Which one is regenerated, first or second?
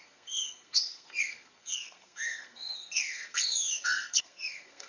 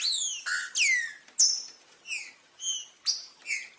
first